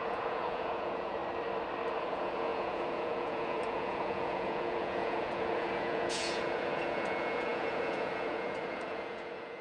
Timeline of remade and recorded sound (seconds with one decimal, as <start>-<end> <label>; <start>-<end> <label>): 0.0-1.2 remade; 1.2-2.0 recorded; 2.0-9.6 remade